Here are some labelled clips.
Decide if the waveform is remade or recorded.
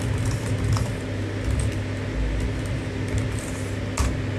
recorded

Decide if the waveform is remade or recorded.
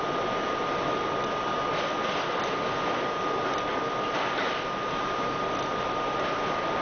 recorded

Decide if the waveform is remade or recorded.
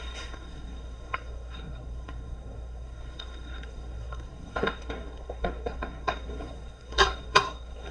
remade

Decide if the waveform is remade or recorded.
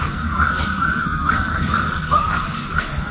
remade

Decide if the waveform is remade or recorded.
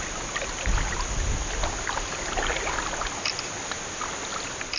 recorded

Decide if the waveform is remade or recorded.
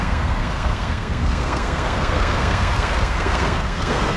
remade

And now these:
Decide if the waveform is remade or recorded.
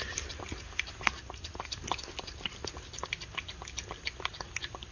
recorded